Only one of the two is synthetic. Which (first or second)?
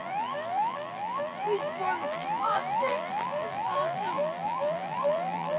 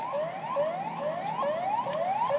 first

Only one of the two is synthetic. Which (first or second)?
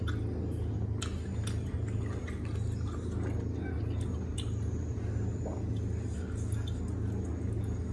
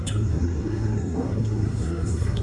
second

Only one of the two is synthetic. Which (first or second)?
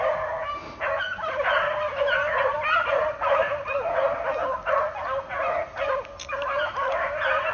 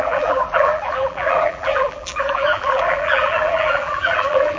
second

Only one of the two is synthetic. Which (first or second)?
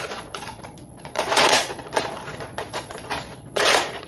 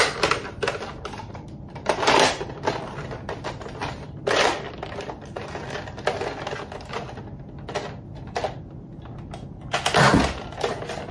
first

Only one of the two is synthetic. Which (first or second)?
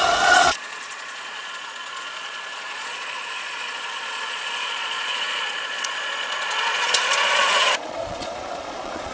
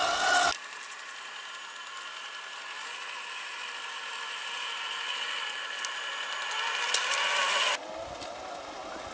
first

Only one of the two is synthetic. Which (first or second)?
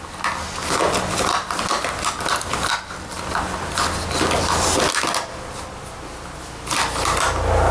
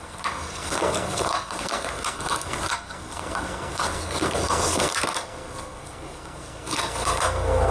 second